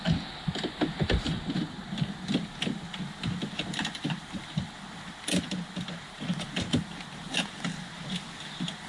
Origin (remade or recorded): remade